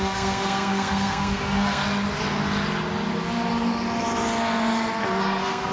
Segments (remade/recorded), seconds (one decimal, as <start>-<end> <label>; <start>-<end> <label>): 0.0-1.8 remade; 1.8-5.2 recorded; 5.2-5.7 remade